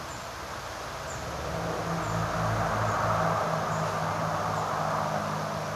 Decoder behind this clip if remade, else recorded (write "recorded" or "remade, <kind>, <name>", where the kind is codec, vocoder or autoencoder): recorded